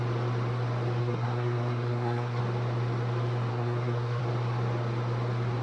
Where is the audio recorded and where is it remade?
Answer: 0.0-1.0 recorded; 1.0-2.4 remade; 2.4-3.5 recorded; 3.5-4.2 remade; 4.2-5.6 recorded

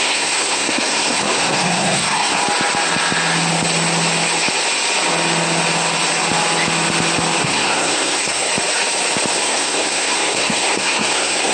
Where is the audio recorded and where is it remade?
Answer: 0.0-2.4 remade; 2.4-7.4 recorded; 7.4-8.5 remade; 8.5-9.3 recorded; 9.3-11.5 remade

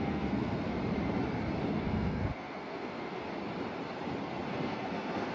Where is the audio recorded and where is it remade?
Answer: 0.0-0.8 remade; 0.8-1.7 recorded; 1.7-3.2 remade; 3.2-4.5 recorded; 4.5-5.3 remade

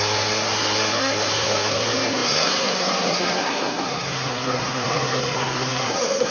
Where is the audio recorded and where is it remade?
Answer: 0.0-6.3 remade

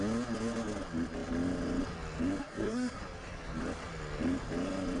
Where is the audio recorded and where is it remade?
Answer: 0.0-2.4 recorded; 2.4-3.0 remade; 3.0-5.0 recorded

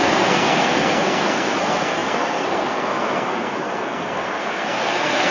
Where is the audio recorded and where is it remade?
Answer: 0.0-5.3 remade

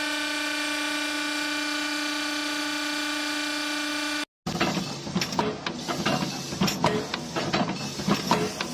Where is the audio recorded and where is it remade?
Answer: 0.0-8.7 recorded